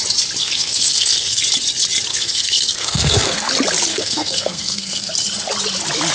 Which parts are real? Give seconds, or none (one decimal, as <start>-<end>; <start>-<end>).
0.0-0.4; 1.4-2.1; 3.5-3.9; 5.1-6.1